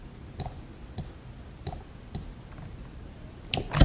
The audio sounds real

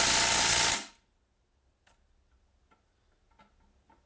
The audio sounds real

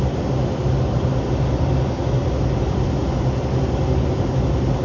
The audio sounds real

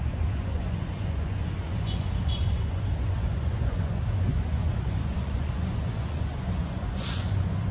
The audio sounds fake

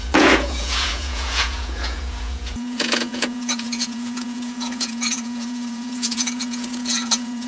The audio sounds fake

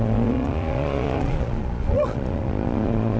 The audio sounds fake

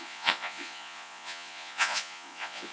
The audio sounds fake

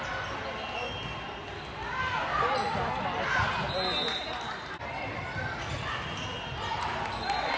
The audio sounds real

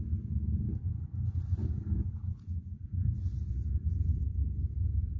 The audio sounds real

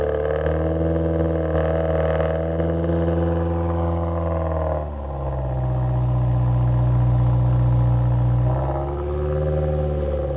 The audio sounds real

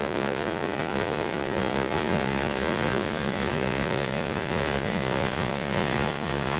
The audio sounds fake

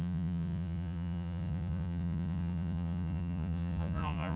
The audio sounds fake